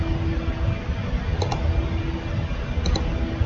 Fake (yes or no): no